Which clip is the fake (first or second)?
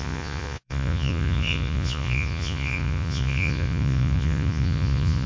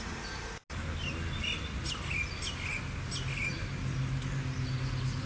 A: first